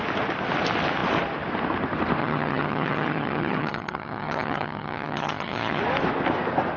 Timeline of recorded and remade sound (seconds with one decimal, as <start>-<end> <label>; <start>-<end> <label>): 0.0-2.2 recorded; 2.2-5.8 remade; 5.8-6.8 recorded